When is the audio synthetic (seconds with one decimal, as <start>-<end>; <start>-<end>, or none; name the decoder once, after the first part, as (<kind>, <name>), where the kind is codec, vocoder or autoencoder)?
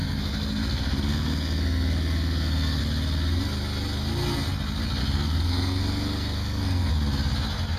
0.0-2.8 (codec, SNAC); 5.0-6.9